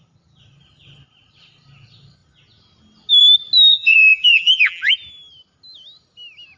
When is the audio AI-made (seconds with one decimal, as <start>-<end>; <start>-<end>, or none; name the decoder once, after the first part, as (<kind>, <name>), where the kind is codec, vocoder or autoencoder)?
3.7-4.9 (vocoder, BigVGAN v2)